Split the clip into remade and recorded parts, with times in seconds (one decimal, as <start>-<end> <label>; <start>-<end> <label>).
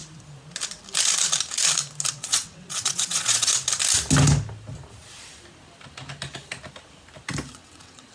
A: 0.0-2.1 recorded; 2.1-3.5 remade; 3.5-7.5 recorded; 7.5-8.1 remade